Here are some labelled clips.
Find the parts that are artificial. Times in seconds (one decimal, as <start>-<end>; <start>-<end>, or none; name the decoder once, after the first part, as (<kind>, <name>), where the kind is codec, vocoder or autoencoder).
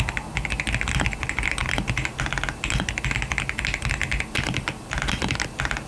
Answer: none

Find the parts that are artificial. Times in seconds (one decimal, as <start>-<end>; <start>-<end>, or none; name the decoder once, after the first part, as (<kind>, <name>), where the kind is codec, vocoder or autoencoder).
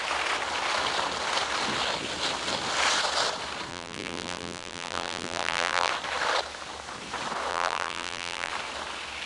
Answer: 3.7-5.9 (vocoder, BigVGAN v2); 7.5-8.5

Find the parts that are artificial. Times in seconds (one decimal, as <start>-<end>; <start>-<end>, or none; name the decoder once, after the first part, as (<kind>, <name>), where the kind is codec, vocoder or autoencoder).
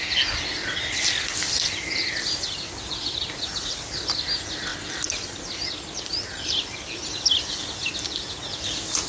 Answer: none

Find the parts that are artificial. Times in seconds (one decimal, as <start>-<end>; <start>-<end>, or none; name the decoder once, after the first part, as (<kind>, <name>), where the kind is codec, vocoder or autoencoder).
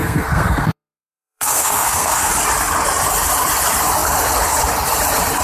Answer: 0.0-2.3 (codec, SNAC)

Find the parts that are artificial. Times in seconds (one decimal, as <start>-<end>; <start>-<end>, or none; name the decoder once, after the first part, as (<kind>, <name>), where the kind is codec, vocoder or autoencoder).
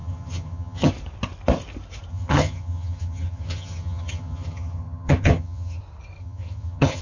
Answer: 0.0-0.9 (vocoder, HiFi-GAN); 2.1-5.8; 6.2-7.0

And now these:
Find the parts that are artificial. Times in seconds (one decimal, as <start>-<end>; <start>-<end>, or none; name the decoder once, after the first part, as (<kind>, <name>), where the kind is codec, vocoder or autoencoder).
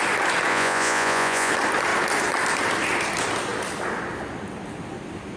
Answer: 0.5-1.5 (vocoder, Vocos)